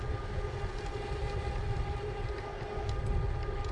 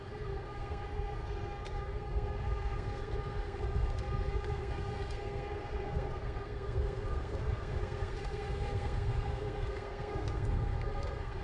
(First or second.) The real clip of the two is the first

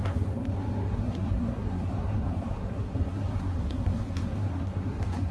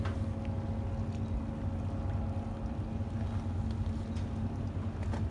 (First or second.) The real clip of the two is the second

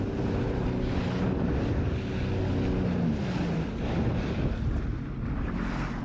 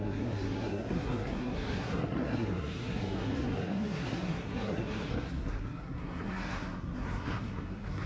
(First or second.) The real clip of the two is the first